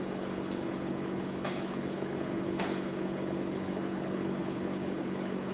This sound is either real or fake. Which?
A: fake